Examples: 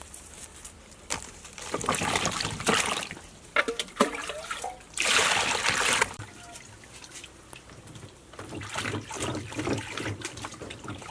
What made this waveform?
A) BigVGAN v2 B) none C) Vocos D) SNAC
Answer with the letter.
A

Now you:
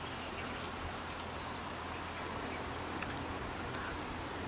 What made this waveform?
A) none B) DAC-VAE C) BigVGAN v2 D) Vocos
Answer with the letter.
A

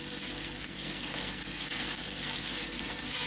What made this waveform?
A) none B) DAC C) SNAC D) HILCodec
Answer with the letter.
C